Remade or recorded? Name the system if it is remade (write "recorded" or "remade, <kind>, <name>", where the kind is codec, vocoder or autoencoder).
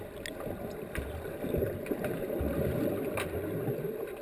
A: recorded